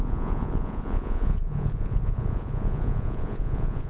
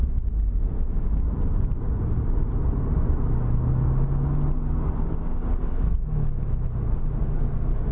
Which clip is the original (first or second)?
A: second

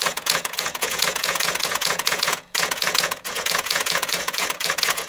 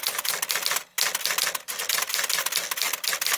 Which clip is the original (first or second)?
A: second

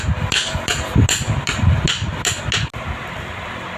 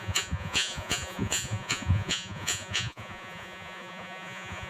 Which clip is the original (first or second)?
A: first